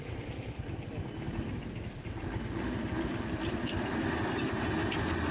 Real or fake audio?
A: real